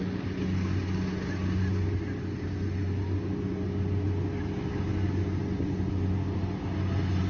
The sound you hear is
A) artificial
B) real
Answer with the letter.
B